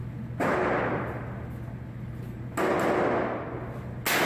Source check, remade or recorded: recorded